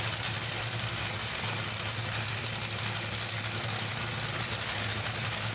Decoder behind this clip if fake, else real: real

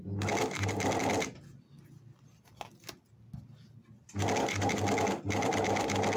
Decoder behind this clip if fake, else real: real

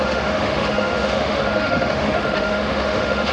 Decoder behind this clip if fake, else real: fake, autoencoder, DAC-VAE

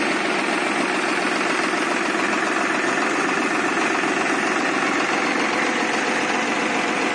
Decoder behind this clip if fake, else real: real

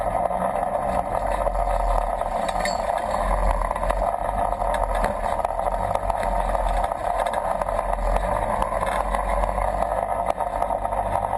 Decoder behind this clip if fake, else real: real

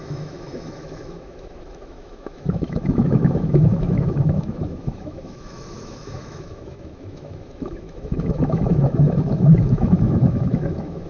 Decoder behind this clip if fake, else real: fake, autoencoder, DAC-VAE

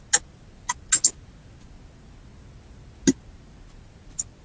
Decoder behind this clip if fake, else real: real